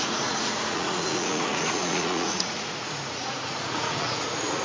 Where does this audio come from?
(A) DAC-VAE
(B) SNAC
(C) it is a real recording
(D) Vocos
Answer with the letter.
D